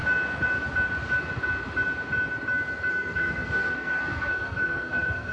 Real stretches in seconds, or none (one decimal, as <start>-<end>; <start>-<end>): 0.0-2.9